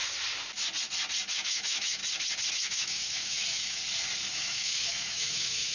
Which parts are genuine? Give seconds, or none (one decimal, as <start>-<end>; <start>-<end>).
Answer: 0.0-1.3; 2.0-2.5; 3.8-4.3